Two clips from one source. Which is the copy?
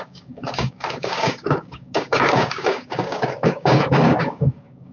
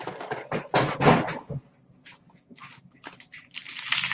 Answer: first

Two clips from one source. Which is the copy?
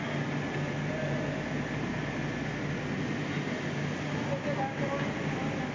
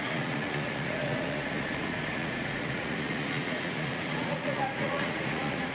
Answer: second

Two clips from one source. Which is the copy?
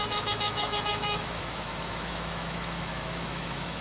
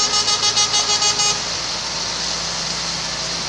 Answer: first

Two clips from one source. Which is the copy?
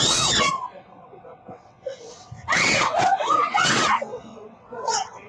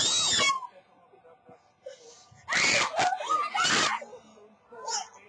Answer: first